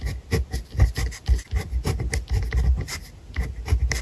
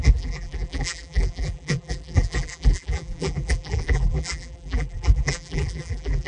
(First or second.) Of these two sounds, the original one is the first